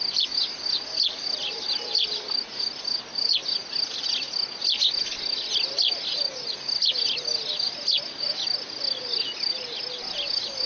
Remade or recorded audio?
recorded